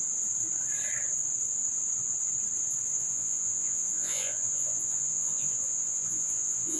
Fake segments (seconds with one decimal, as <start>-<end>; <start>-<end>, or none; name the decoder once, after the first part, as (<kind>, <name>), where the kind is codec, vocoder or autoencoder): 2.9-6.8 (vocoder, Vocos)

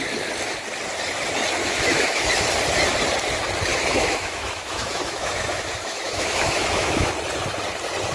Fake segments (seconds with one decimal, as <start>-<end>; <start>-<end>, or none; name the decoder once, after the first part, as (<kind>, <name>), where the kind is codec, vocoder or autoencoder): 1.6-2.3 (autoencoder, DAC-VAE); 3.7-7.1

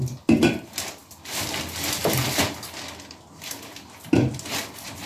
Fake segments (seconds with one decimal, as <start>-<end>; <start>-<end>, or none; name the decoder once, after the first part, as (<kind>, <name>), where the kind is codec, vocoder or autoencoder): none

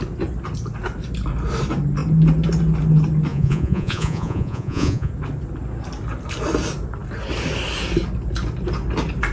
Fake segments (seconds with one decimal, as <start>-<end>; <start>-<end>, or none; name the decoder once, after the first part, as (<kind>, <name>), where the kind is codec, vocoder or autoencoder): 3.3-5.1 (vocoder, Vocos)

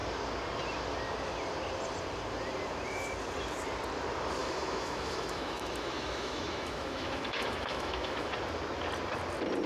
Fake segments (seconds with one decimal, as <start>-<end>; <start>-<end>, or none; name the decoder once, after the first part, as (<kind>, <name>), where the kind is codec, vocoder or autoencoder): 4.4-8.3 (autoencoder, DAC-VAE)

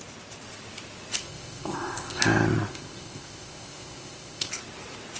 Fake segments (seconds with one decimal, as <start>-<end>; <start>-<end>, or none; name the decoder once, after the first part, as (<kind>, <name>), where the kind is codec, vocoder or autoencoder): 1.2-2.2 (codec, ZipCodec); 2.7-4.5